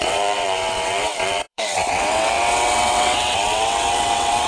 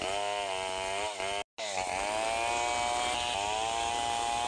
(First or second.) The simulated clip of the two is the first